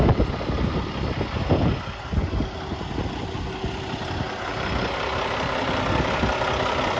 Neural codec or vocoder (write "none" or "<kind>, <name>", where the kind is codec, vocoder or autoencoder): none